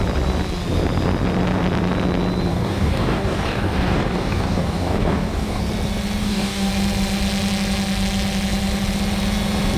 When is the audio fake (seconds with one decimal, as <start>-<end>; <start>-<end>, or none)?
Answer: 2.5-5.6; 6.2-6.7